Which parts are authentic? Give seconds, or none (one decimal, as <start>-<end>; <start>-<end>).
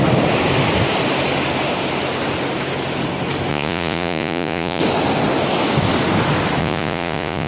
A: 0.0-3.5; 4.8-6.6